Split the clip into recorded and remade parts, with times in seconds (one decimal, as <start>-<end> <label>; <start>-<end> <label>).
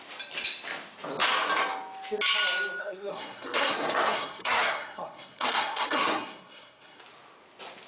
0.0-2.8 recorded; 2.8-7.0 remade; 7.0-7.9 recorded